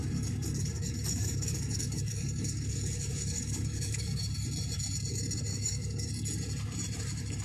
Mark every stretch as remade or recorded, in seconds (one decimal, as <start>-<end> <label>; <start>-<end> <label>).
0.0-4.2 remade; 4.2-5.5 recorded; 5.5-6.1 remade; 6.1-7.4 recorded